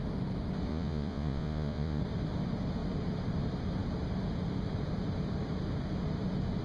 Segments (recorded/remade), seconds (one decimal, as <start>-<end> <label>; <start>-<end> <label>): 0.0-0.7 recorded; 0.7-2.0 remade; 2.0-6.6 recorded